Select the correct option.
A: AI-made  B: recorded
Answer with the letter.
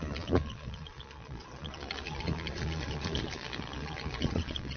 A